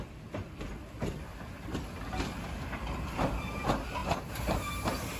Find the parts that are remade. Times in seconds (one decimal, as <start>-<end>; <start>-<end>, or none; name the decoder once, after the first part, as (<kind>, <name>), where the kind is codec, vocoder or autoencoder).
none